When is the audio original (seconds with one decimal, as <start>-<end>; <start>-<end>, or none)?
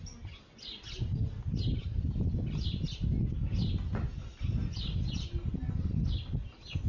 0.0-6.9